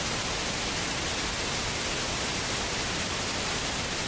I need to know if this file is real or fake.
real